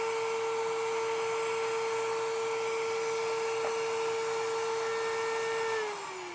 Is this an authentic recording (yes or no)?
yes